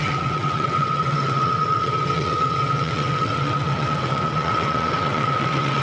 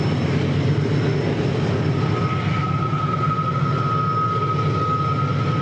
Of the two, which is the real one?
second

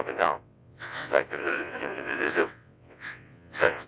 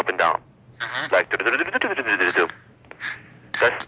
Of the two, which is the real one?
second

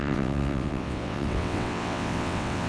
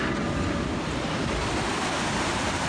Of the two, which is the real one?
second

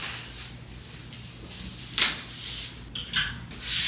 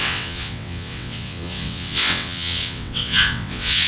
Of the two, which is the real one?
first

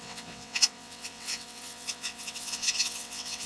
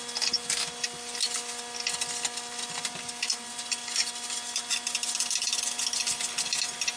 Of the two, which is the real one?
second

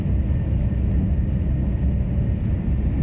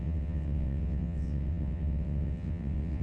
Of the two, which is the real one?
first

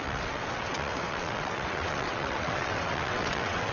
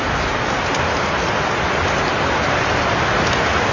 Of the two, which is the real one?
second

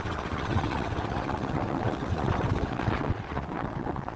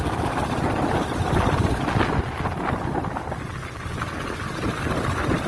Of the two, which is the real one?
second